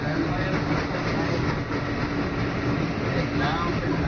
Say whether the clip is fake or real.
real